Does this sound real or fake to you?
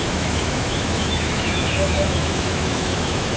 fake